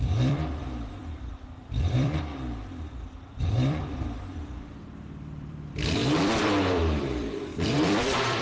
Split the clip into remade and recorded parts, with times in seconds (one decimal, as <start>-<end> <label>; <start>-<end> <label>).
0.0-2.3 remade; 2.3-3.4 recorded; 3.4-8.4 remade